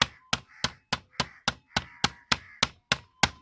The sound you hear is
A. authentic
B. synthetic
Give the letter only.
A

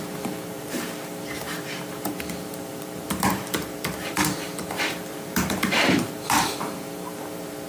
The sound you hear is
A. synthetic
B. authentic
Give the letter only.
A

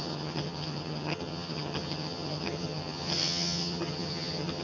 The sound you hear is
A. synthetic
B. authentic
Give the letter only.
A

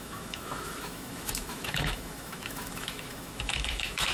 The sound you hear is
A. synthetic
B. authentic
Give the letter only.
A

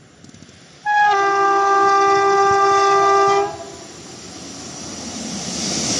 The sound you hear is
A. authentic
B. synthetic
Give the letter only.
A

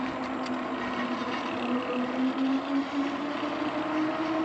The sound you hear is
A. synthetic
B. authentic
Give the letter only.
B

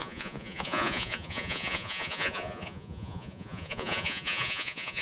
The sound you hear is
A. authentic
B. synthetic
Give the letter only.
B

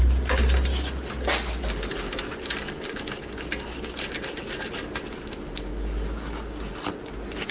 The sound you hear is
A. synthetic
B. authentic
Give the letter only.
B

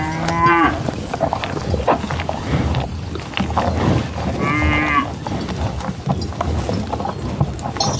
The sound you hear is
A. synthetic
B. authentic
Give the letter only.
B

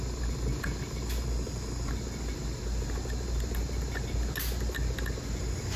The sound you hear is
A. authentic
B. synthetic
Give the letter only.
A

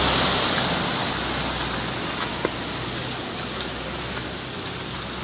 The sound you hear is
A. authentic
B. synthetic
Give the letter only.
A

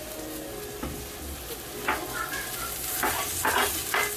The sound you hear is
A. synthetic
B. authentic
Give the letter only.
B